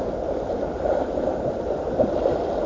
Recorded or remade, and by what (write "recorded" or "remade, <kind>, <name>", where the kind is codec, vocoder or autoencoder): remade, vocoder, BigVGAN v2